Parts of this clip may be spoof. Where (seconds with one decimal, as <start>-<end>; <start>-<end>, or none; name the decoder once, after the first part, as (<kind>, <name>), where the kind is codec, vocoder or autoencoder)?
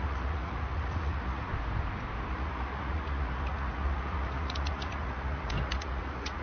0.0-1.5 (vocoder, Vocos); 2.3-6.4